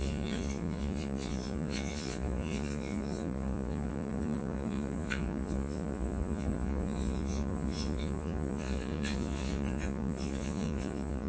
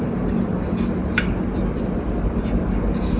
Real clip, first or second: second